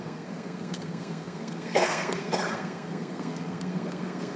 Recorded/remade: remade